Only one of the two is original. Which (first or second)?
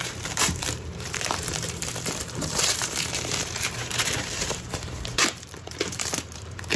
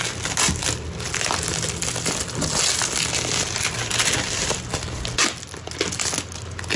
second